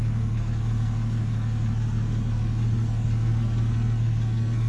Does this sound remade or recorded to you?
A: remade